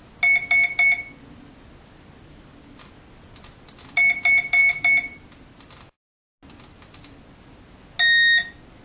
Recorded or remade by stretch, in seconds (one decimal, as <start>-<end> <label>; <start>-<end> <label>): 0.0-8.8 recorded